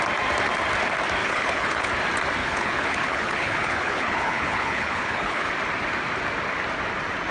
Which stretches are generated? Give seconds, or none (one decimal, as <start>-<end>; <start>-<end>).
1.2-1.9; 2.4-5.5